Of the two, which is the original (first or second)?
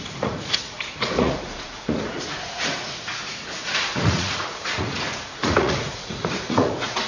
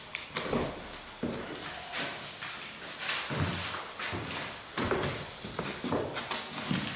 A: second